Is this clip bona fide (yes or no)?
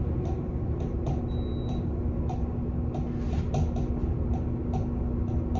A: yes